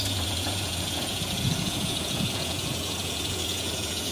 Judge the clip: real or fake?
fake